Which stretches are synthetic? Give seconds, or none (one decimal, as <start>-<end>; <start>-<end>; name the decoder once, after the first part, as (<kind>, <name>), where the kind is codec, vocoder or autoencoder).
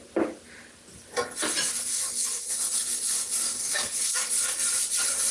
1.7-4.5 (codec, SNAC)